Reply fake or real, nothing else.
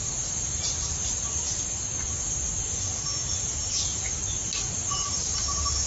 real